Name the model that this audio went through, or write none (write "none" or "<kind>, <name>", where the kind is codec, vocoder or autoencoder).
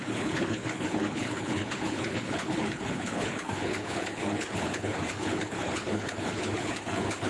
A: codec, HILCodec